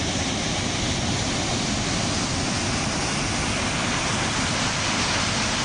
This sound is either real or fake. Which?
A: real